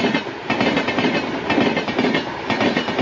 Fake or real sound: real